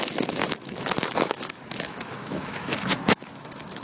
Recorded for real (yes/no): no